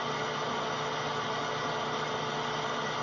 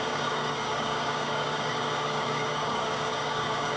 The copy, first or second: second